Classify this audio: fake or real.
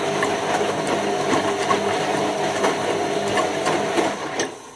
real